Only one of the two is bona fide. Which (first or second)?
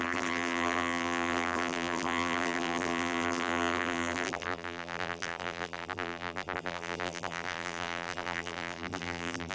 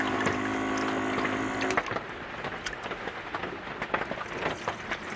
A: second